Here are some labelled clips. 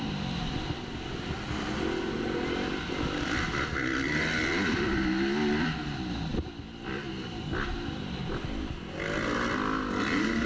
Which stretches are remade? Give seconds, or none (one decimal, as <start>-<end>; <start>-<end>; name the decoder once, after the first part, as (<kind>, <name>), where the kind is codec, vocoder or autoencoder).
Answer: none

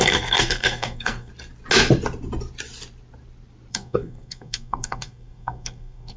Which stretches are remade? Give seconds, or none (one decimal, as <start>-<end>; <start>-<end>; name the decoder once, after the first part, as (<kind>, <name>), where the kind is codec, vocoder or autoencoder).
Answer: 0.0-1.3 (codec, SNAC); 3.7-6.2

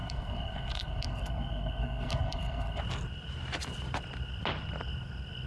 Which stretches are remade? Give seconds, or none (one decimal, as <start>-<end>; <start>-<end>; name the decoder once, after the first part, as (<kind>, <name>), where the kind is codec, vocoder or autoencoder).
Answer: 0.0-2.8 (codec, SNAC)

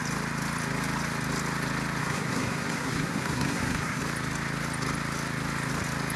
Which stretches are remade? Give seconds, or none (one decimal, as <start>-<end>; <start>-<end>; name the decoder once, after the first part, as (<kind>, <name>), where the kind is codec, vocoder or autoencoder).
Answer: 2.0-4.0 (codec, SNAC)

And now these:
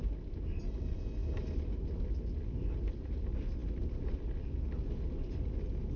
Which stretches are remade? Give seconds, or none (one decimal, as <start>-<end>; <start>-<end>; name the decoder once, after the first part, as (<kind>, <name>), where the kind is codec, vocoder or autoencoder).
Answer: none